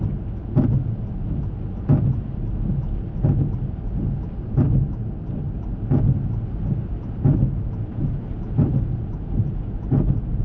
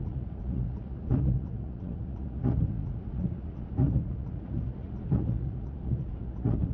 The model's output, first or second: second